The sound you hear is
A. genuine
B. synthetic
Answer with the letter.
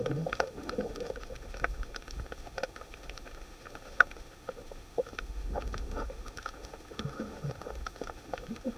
B